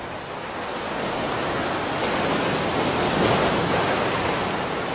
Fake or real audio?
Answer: real